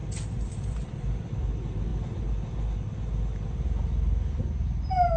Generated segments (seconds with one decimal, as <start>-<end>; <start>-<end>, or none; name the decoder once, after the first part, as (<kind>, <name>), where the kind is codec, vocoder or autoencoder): 0.0-1.3 (vocoder, BigVGAN v2)